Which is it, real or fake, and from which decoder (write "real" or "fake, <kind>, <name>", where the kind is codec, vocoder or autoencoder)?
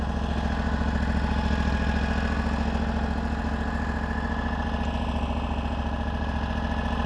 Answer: real